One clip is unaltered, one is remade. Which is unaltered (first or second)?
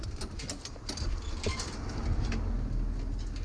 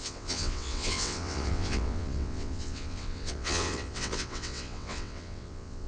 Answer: first